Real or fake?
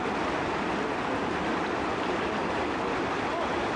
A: real